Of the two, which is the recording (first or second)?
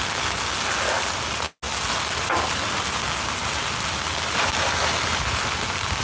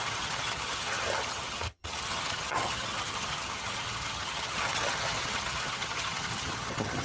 first